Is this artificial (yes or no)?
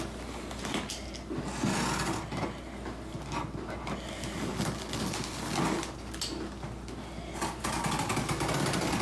no